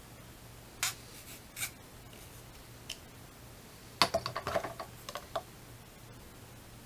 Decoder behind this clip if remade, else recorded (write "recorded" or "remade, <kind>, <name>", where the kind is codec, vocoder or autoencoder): recorded